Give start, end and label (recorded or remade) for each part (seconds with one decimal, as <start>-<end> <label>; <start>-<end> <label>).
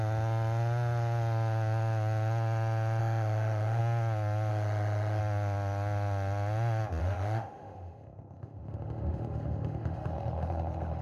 0.0-3.0 recorded; 3.0-3.8 remade; 3.8-4.5 recorded; 4.5-5.2 remade; 5.2-7.0 recorded; 7.0-11.0 remade